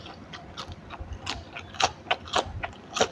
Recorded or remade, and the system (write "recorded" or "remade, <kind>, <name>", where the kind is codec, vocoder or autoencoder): recorded